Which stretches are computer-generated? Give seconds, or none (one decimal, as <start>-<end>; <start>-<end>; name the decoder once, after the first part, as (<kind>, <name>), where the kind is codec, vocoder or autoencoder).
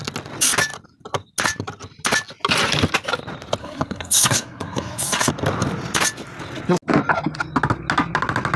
3.6-5.3 (codec, SNAC)